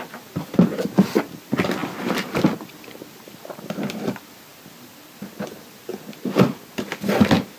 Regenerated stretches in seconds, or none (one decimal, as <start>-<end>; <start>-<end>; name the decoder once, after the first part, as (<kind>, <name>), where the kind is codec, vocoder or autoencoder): none